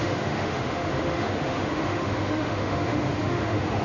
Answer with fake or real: fake